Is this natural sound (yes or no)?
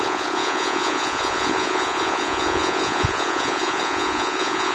no